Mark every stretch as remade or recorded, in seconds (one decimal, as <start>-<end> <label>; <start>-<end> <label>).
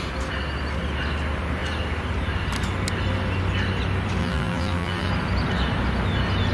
0.0-4.2 recorded; 4.2-5.1 remade; 5.1-6.5 recorded